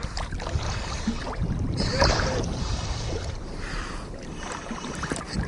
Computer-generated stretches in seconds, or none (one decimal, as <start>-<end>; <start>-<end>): 1.9-5.5

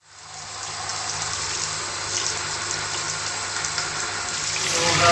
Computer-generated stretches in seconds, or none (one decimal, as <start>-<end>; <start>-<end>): none

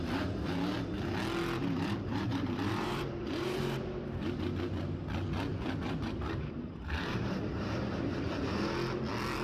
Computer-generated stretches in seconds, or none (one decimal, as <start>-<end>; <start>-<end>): 1.6-4.5; 5.5-8.3